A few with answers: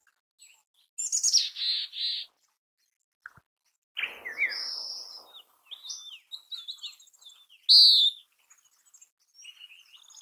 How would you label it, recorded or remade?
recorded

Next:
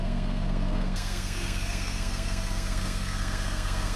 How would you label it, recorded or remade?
remade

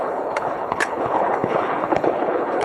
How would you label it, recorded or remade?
remade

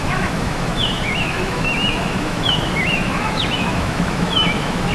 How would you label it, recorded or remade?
remade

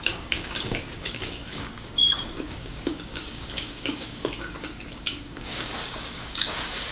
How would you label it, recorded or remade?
remade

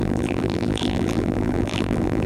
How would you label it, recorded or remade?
remade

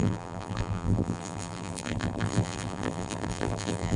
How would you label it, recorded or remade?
remade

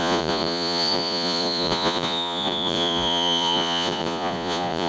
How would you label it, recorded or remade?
remade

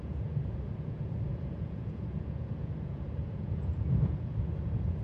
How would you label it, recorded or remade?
remade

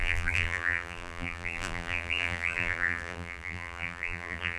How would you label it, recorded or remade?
remade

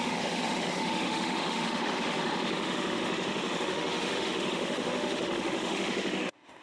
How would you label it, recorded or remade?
remade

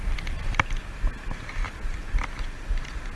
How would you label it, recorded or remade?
recorded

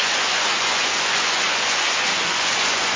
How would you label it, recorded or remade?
remade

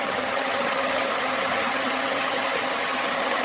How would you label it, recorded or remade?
remade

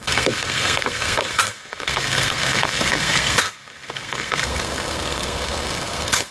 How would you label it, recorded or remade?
remade